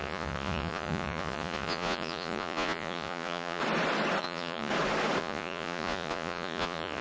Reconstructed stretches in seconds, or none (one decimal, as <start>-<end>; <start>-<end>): 0.0-3.6; 4.2-4.7; 5.2-7.0